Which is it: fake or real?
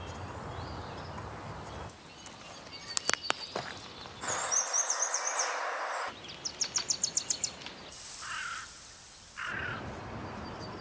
real